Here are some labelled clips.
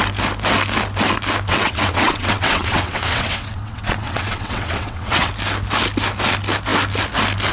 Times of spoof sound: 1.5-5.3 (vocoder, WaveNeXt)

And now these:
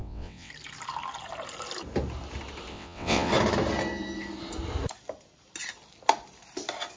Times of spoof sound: 0.0-0.5 (vocoder, WaveNeXt); 2.7-3.3